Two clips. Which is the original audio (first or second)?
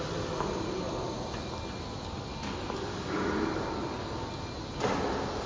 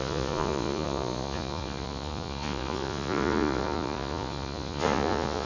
first